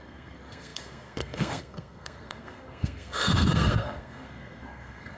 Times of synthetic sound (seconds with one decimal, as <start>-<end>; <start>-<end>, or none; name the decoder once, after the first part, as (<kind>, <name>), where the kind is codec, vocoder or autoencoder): 0.0-5.2 (codec, SNAC)